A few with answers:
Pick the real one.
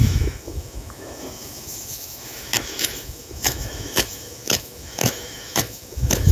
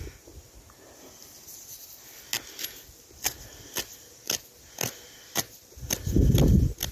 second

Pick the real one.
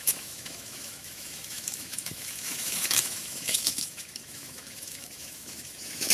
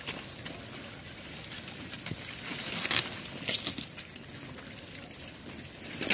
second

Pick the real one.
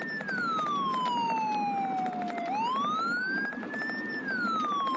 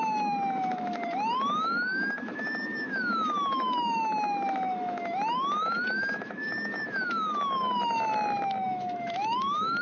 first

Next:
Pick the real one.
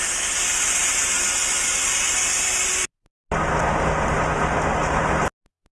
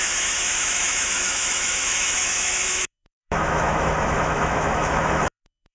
first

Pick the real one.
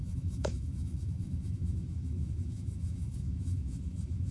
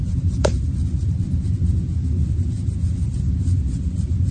second